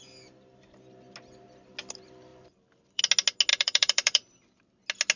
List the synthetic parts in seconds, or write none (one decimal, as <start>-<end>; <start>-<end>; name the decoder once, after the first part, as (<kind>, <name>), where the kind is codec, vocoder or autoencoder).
2.3-3.0 (vocoder, BigVGAN v2); 3.5-4.6